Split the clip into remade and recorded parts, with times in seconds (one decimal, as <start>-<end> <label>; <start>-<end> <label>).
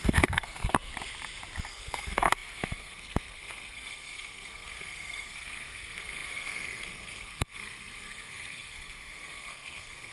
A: 0.0-0.9 remade; 0.9-1.7 recorded; 1.7-10.1 remade